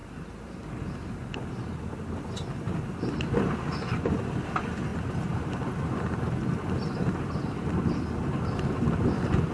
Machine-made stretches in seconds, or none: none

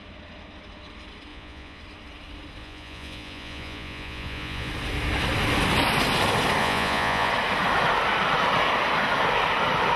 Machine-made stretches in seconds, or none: 1.3-1.8; 2.6-4.7; 6.6-7.3